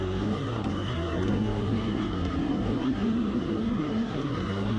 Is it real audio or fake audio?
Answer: fake